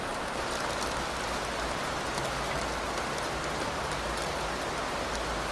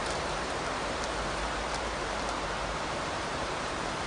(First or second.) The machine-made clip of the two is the second